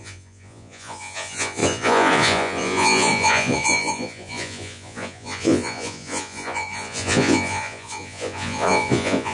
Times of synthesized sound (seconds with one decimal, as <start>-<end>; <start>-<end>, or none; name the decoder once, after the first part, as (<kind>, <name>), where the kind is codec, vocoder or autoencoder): 0.0-9.3 (vocoder, Vocos)